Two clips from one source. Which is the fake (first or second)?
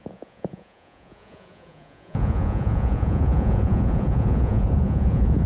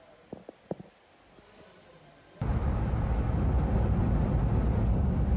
first